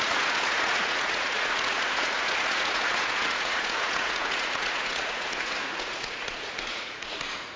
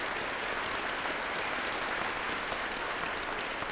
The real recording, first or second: second